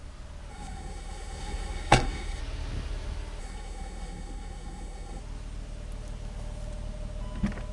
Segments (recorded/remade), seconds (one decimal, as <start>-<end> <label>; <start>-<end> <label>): 0.0-0.5 recorded; 0.5-2.4 remade; 2.4-3.4 recorded; 3.4-5.2 remade; 5.2-7.7 recorded